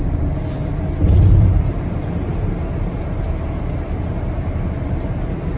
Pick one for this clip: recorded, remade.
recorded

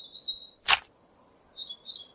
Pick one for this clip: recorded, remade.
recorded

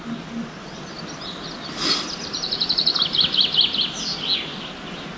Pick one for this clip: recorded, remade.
recorded